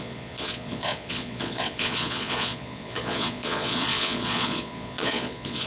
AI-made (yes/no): yes